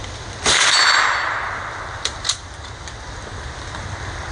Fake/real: real